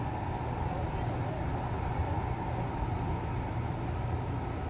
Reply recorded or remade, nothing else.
recorded